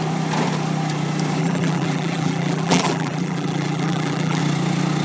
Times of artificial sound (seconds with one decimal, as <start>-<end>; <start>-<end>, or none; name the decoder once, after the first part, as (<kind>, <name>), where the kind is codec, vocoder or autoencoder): 1.4-4.4 (vocoder, BigVGAN v2)